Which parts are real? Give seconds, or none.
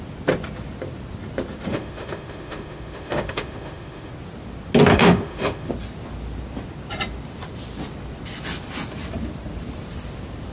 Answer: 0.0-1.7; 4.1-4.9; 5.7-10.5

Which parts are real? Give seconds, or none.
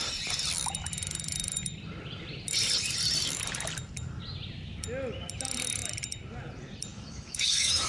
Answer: 0.0-6.9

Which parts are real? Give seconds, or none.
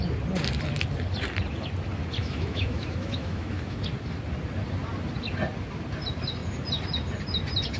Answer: 0.0-2.2; 3.8-7.8